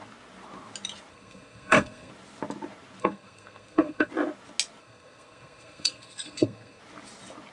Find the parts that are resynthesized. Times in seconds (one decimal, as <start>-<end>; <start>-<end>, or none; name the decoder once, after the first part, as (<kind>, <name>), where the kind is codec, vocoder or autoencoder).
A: 1.1-2.1 (codec, SNAC); 3.0-4.1; 4.8-6.8

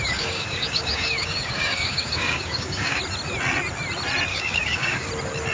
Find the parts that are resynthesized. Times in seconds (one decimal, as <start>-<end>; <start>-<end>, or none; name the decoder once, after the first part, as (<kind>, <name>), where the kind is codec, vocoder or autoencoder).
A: 0.0-3.0 (codec, DAC); 4.3-5.1

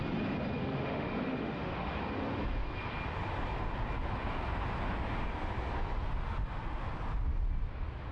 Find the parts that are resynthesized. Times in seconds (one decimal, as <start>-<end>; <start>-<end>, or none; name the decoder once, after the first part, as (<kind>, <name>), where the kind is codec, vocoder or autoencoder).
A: 0.6-1.9 (autoencoder, DAC-VAE); 6.4-6.9

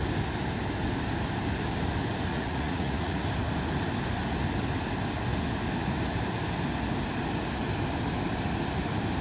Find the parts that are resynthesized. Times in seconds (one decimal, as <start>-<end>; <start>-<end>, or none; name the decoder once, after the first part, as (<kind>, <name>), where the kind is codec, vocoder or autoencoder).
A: 2.3-3.2 (vocoder, Vocos)

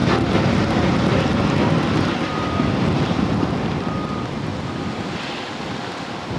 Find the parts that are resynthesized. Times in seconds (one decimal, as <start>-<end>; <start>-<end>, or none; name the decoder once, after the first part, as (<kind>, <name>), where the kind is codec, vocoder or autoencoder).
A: 0.0-4.5 (vocoder, BigVGAN v2); 6.0-6.4